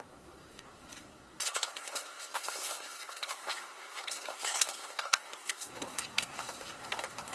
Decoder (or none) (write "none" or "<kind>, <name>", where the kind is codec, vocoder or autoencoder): codec, SNAC